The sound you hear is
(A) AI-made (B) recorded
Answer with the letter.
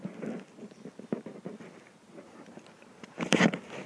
B